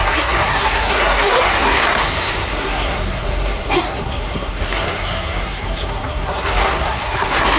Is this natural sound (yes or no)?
no